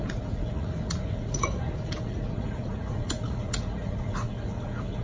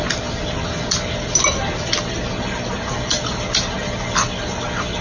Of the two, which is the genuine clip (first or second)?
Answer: second